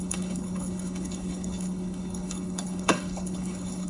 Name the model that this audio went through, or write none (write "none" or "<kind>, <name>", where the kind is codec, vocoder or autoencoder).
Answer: codec, HILCodec